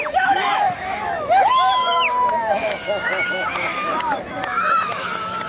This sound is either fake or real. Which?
fake